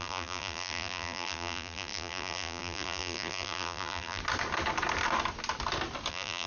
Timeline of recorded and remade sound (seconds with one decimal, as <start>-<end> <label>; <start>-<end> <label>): 0.0-4.2 remade; 4.2-6.1 recorded; 6.1-6.5 remade